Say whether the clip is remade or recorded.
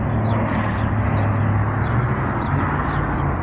recorded